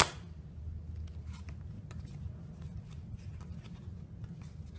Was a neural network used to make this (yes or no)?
no